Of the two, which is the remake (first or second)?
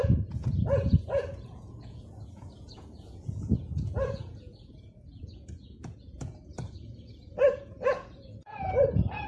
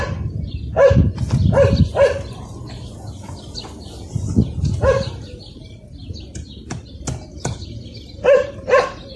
first